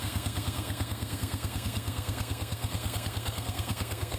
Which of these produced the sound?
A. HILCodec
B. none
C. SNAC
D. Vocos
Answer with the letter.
C